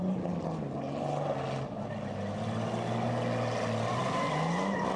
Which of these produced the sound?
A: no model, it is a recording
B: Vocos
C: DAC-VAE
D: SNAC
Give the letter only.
A